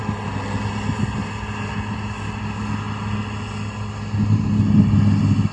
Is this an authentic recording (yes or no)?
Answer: yes